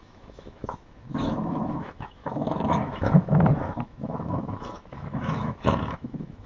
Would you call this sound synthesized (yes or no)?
yes